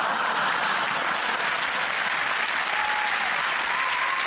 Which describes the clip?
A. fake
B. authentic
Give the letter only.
B